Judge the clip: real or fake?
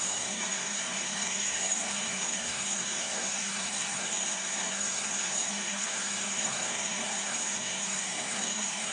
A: fake